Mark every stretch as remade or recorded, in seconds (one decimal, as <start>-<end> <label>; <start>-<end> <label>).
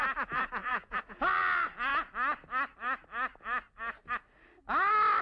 0.0-0.6 recorded; 0.6-1.2 remade; 1.2-5.2 recorded